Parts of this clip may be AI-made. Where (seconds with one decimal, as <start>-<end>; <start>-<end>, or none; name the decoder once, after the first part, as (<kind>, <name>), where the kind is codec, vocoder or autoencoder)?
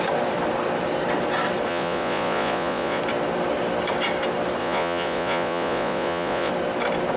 1.7-3.0 (vocoder, Vocos); 4.6-6.5